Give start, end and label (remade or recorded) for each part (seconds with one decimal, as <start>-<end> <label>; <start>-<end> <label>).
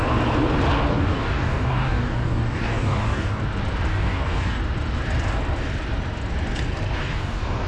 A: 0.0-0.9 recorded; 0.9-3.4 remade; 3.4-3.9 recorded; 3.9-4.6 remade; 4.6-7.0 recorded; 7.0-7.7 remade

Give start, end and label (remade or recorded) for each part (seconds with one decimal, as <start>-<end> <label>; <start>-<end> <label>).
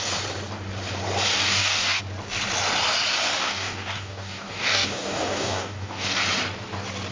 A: 0.0-1.3 recorded; 1.3-2.0 remade; 2.0-3.4 recorded; 3.4-6.2 remade; 6.2-7.1 recorded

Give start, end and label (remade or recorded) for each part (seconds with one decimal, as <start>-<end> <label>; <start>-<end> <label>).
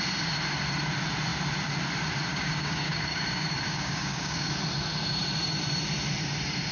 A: 0.0-2.3 recorded; 2.3-4.5 remade; 4.5-6.7 recorded